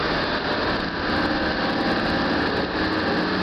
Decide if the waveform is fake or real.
real